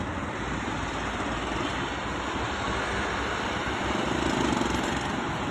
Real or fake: real